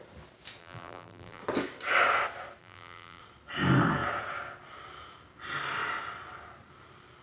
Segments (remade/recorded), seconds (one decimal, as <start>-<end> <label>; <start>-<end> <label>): 0.0-0.6 recorded; 0.6-1.4 remade; 1.4-2.6 recorded; 2.6-3.2 remade; 3.2-7.2 recorded